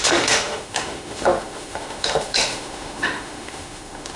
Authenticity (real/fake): fake